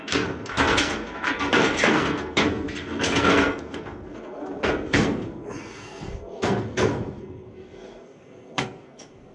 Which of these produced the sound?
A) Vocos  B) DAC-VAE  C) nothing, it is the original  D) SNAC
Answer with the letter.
D